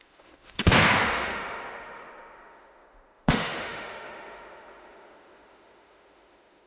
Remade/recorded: remade